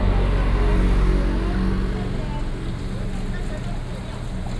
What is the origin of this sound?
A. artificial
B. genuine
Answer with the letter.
B